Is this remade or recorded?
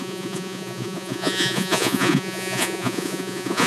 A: remade